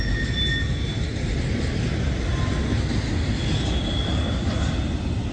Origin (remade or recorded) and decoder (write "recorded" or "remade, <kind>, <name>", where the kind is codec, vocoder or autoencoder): recorded